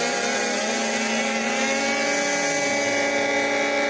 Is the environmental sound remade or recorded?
recorded